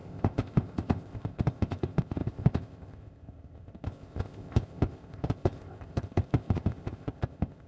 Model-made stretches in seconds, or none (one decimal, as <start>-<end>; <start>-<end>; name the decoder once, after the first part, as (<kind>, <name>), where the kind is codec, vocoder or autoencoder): 0.0-7.7 (codec, ZipCodec)